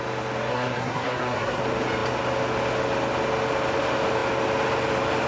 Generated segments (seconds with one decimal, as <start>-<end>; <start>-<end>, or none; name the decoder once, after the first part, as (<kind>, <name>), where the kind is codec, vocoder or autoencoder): 0.5-1.6 (codec, SNAC)